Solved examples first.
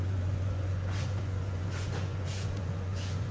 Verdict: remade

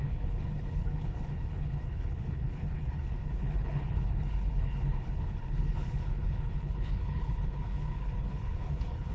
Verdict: remade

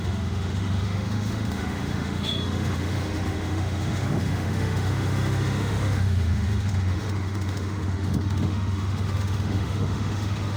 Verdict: remade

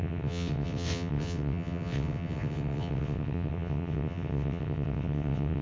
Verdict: remade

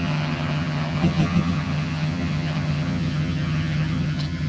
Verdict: remade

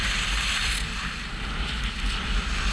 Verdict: recorded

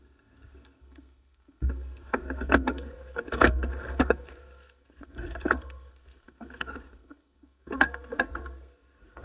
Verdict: remade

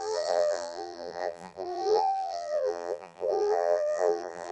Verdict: remade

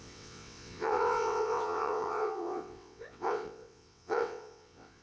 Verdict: remade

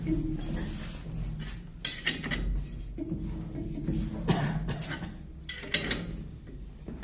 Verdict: recorded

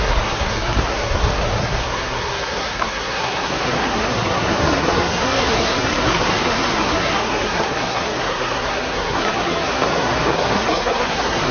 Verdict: remade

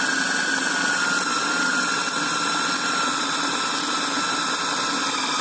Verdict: recorded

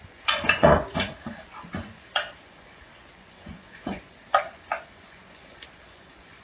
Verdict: remade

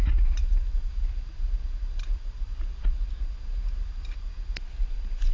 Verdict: recorded